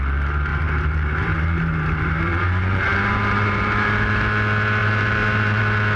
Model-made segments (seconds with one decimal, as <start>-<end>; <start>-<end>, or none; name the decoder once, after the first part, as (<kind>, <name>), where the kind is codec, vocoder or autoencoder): 0.5-4.1 (vocoder, BigVGAN v2); 4.8-5.6